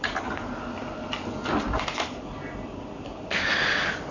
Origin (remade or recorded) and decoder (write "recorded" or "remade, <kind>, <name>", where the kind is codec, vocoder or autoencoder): recorded